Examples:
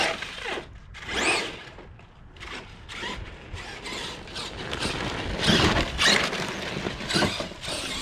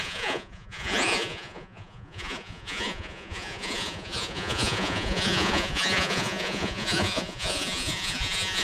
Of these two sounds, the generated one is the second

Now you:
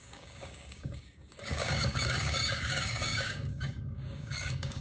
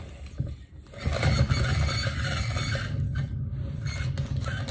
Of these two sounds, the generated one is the first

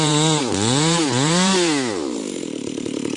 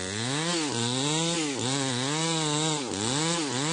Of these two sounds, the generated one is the first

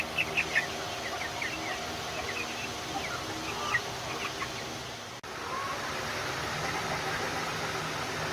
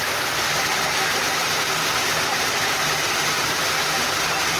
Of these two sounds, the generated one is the second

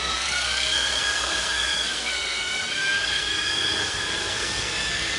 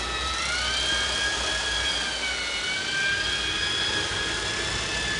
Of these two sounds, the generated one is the first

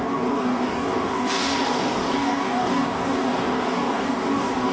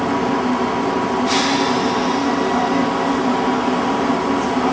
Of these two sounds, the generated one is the first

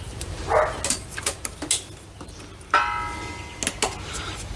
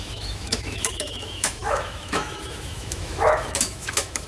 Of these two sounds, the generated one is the second